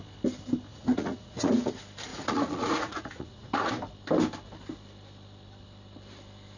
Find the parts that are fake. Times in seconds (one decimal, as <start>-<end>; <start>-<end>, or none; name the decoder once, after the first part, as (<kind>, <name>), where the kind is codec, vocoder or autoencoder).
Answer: 0.7-1.7 (vocoder, Vocos); 2.1-3.7